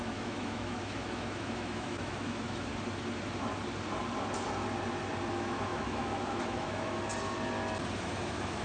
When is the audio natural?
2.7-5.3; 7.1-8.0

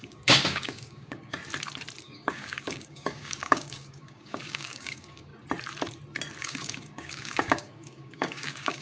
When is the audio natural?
1.4-2.0; 5.3-6.4

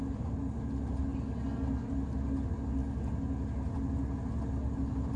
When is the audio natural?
0.0-4.6

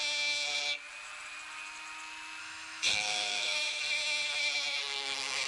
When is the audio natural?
0.0-2.4; 3.8-5.5

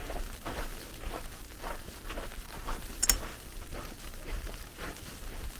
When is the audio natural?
0.0-5.6